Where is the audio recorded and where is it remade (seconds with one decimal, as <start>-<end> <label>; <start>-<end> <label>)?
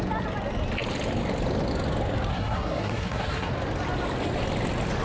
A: 0.0-2.3 recorded; 2.3-3.5 remade; 3.5-5.0 recorded